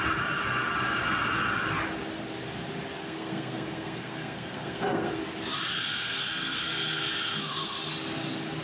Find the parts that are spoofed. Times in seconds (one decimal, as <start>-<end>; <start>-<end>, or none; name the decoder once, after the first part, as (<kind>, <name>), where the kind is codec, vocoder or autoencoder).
3.0-5.2 (codec, SNAC); 5.8-7.7